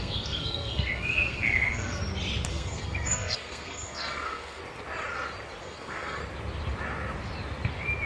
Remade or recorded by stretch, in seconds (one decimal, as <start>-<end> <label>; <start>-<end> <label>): 0.0-2.0 remade; 2.0-2.5 recorded; 2.5-4.6 remade; 4.6-5.6 recorded; 5.6-6.2 remade; 6.2-8.1 recorded